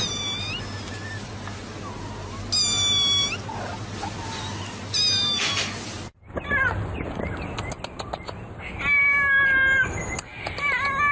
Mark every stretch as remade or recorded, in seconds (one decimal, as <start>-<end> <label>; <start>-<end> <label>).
0.0-11.1 recorded